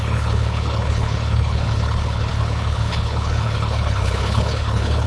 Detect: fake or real fake